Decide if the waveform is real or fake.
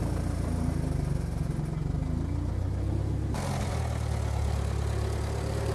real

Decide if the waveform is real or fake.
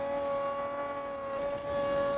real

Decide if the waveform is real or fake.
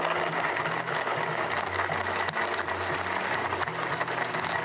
real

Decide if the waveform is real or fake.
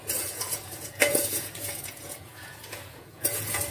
fake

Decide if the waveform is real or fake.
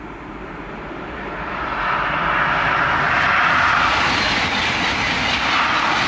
real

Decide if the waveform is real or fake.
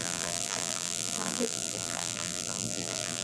fake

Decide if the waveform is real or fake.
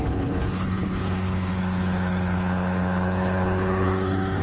fake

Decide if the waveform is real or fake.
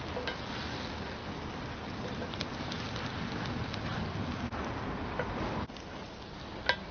real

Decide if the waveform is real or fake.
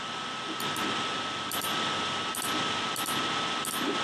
real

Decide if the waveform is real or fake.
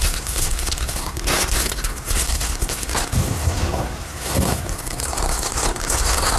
fake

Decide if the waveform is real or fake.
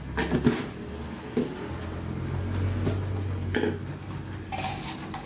real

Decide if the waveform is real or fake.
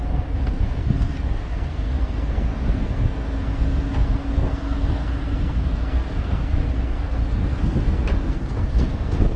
fake